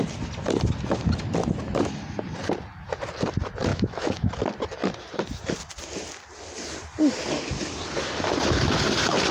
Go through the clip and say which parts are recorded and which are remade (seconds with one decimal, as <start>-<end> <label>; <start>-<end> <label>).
0.0-3.7 recorded; 3.7-4.3 remade; 4.3-9.3 recorded